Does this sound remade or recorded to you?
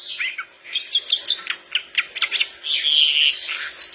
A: recorded